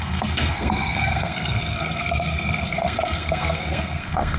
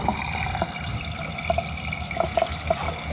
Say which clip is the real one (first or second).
second